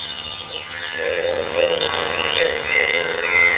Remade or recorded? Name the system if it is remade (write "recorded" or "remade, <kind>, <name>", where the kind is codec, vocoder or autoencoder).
remade, vocoder, HiFi-GAN